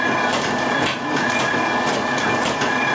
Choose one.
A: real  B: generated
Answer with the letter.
A